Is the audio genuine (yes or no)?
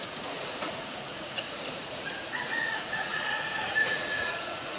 no